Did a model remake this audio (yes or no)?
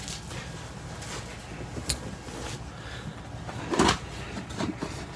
no